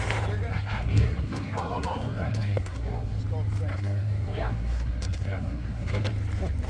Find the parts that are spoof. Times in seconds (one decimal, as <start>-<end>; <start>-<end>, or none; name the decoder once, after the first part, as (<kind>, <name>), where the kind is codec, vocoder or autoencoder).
0.5-3.2 (codec, SNAC); 3.7-6.1